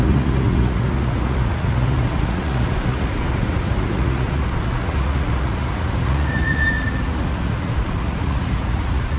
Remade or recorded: remade